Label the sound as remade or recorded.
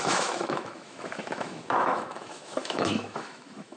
remade